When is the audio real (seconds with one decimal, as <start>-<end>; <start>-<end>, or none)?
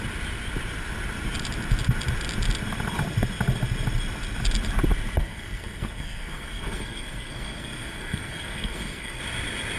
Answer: 0.0-5.2; 9.2-9.8